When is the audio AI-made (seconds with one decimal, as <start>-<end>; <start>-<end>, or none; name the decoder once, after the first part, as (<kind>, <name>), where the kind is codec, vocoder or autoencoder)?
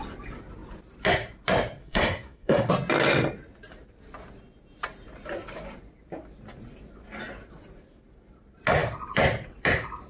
1.8-2.7 (codec, SNAC)